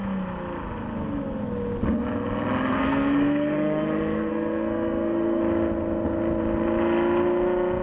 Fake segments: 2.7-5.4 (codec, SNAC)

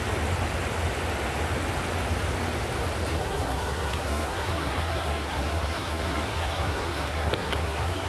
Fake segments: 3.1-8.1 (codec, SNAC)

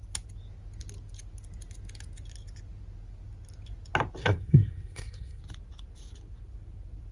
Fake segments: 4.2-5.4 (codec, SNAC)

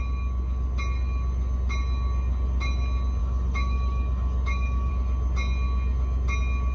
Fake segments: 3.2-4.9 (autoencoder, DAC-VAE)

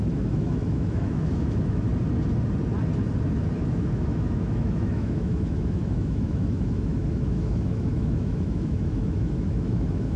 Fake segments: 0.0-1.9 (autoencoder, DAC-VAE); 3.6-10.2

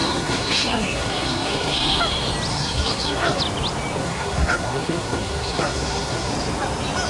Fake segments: 0.0-2.0 (codec, SNAC); 2.5-3.4; 4.0-6.3

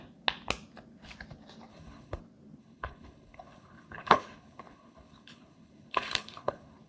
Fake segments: 1.7-2.2 (codec, HILCodec); 2.6-6.9